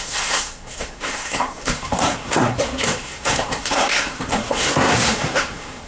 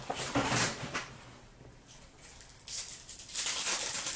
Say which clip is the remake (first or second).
first